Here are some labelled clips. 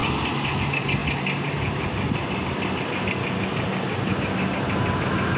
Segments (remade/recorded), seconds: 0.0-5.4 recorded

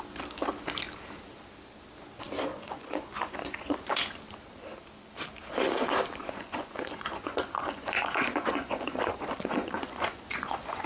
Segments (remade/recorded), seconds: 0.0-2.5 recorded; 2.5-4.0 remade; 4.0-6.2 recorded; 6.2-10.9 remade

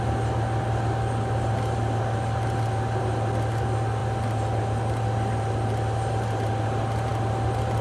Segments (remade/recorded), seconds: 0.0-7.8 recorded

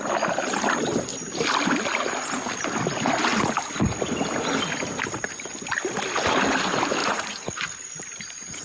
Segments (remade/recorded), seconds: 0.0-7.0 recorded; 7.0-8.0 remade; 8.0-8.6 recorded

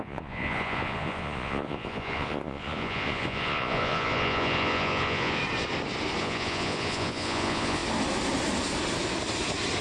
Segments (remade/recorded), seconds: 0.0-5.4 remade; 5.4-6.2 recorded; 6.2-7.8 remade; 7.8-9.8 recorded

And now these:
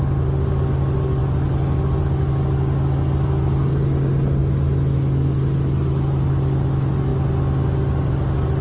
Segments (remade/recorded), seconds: 0.0-8.6 recorded

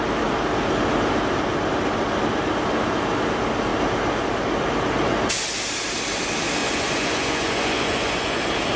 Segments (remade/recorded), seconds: 0.0-6.6 recorded; 6.6-8.4 remade; 8.4-8.8 recorded

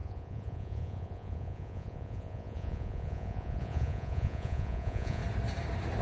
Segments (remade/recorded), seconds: 0.0-5.2 remade; 5.2-6.0 recorded